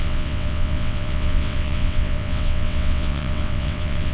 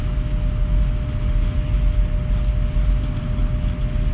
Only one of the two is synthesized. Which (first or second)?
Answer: first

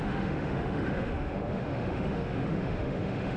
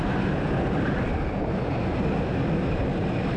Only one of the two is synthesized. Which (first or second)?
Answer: first